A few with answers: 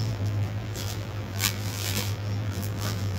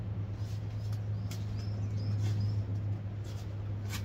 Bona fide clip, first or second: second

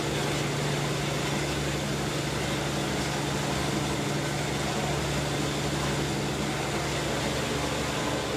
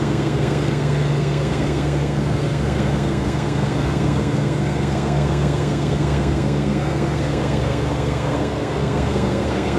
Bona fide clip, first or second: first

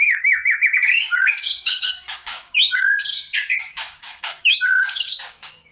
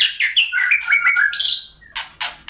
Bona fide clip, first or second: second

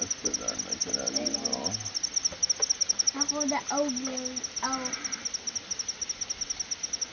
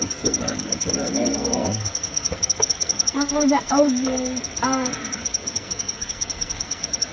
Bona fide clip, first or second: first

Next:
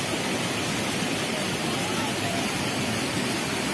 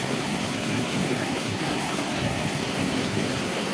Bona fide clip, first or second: first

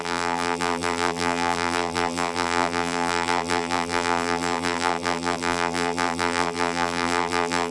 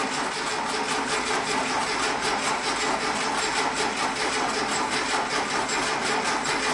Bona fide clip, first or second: second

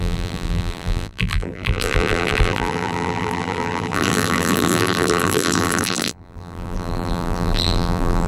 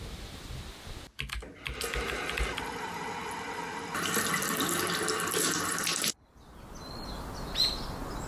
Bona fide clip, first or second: second